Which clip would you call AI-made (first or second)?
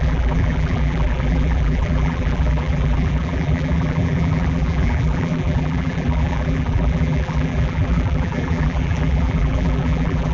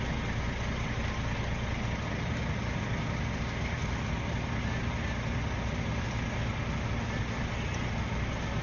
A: first